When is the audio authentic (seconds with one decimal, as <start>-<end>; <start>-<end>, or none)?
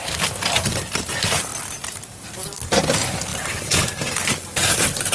0.0-3.3